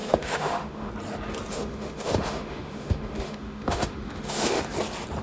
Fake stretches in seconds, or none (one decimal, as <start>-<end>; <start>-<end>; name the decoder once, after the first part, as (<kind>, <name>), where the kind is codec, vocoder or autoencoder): 0.0-0.9 (autoencoder, DAC-VAE); 1.5-4.6